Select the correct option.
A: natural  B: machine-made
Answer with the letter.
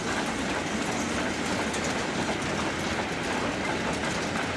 A